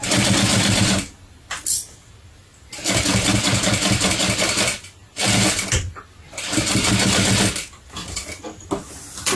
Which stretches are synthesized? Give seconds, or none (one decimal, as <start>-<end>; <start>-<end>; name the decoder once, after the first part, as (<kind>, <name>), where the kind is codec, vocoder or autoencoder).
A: none